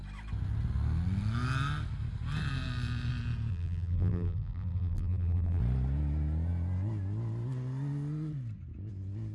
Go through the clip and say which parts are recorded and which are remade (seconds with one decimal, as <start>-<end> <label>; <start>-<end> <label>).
0.0-3.5 recorded; 3.5-5.6 remade; 5.6-9.3 recorded